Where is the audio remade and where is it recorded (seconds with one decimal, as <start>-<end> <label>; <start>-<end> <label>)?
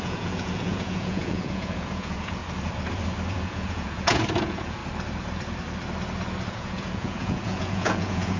0.0-2.4 remade; 2.4-3.3 recorded; 3.3-4.8 remade; 4.8-6.5 recorded; 6.5-8.4 remade